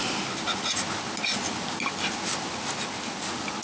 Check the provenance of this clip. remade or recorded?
recorded